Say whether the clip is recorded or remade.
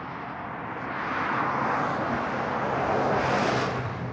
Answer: recorded